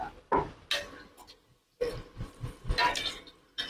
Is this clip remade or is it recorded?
recorded